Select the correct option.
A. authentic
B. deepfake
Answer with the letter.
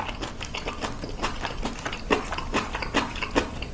A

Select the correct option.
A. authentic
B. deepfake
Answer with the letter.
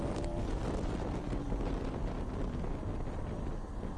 A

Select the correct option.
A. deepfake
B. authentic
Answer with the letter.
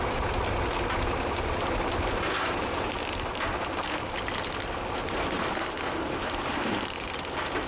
B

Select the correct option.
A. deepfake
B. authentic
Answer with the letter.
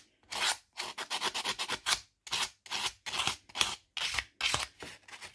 B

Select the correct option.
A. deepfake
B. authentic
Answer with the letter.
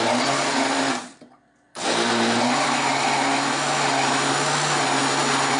B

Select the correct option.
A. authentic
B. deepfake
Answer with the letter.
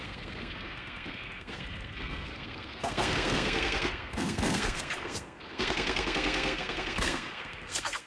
B